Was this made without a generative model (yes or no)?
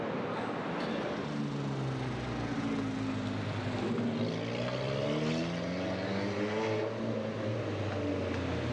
yes